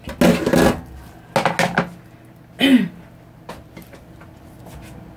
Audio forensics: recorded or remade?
recorded